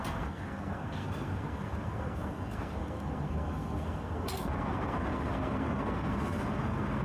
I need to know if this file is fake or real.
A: fake